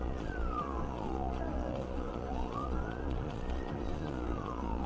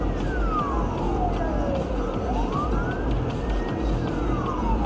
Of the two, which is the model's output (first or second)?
first